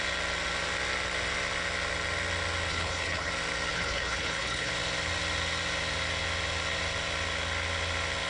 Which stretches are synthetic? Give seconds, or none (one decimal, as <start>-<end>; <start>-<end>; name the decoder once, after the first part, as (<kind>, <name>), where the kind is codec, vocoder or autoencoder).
2.7-3.3 (codec, HILCodec); 3.7-4.7